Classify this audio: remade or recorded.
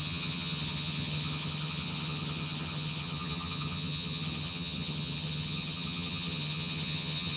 remade